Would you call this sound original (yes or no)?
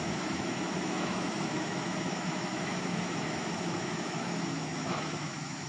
no